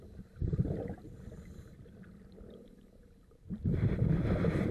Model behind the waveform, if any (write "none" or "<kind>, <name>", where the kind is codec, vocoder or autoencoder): vocoder, BigVGAN v2